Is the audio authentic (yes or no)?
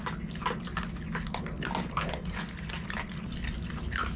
yes